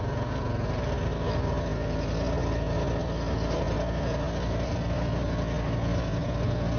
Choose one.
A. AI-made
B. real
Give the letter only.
B